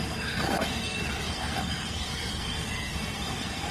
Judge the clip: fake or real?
fake